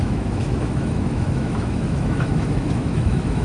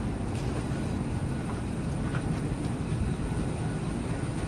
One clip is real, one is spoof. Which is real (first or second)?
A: second